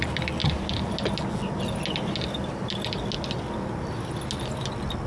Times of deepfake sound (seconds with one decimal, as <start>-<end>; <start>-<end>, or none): none